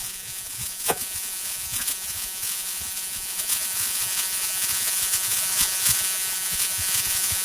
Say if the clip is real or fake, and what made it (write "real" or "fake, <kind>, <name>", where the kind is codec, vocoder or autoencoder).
fake, vocoder, Vocos